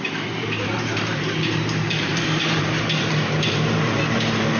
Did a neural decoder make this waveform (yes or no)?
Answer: yes